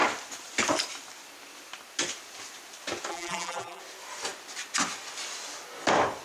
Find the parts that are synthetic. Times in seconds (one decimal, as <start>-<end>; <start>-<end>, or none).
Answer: 3.1-3.8